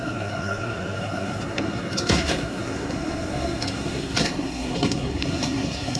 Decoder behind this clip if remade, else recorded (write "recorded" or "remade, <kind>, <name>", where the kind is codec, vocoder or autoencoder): remade, codec, SNAC